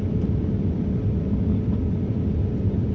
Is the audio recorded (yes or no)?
yes